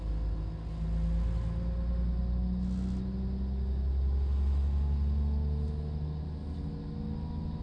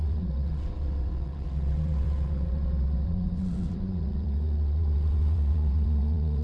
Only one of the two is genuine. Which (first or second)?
first